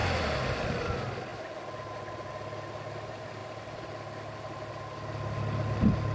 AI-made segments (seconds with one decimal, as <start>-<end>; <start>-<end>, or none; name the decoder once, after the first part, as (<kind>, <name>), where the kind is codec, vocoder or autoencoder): none